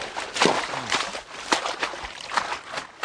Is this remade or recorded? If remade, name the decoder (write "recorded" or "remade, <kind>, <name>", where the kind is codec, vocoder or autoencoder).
recorded